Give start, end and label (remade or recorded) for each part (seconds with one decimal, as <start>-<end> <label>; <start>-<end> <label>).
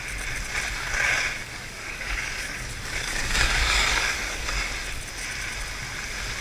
0.0-1.4 recorded; 1.4-4.7 remade; 4.7-6.4 recorded